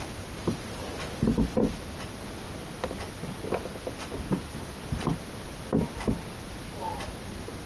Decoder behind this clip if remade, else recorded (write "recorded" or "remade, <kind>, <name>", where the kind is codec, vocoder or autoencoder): recorded